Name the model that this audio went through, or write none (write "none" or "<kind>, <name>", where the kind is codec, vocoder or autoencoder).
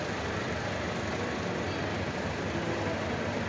none